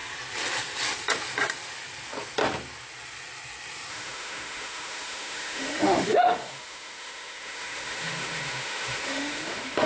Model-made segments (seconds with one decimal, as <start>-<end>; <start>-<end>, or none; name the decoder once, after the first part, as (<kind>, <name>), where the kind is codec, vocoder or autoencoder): 3.9-9.9 (autoencoder, DAC-VAE)

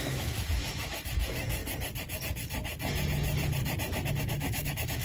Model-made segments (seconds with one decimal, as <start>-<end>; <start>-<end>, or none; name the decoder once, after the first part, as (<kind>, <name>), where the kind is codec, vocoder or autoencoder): 0.0-1.6 (autoencoder, DAC-VAE); 4.1-5.0

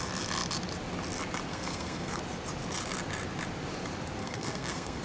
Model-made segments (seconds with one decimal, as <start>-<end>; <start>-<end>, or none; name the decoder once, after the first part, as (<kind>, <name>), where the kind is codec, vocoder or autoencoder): 1.5-2.2 (codec, SNAC); 4.2-5.0

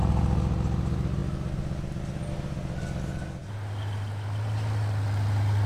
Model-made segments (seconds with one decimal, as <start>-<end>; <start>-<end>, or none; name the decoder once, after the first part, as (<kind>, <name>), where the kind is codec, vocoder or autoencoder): none

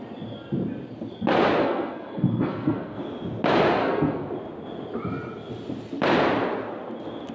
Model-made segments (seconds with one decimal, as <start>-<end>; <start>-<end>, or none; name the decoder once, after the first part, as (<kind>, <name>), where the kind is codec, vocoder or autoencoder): 1.6-3.0 (codec, SNAC); 3.8-4.3

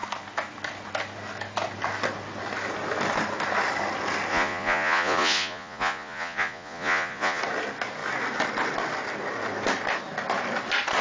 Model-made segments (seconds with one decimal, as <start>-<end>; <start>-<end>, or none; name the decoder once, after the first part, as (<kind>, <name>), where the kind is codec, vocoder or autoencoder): 4.3-7.4 (vocoder, Vocos)